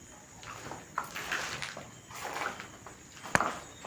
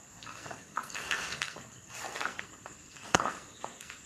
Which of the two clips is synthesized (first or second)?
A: second